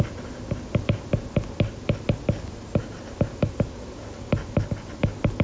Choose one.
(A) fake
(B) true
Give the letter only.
B